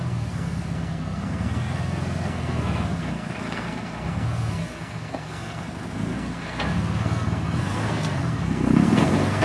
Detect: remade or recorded remade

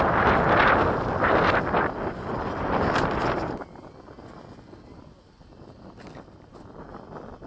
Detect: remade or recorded recorded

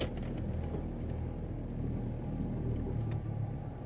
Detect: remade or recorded recorded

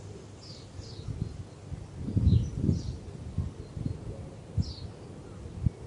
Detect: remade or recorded recorded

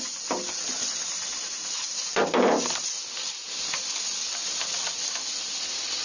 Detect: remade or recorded recorded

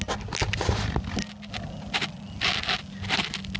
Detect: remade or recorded recorded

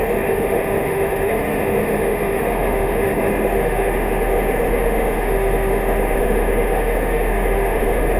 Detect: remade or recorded remade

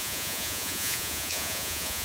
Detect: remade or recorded remade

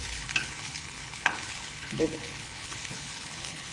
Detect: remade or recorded remade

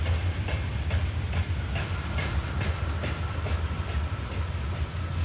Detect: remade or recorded recorded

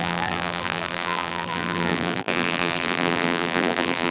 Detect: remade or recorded remade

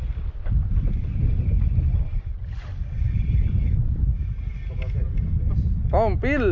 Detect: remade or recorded recorded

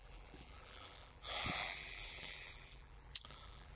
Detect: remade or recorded remade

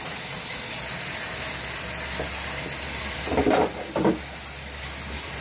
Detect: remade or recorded recorded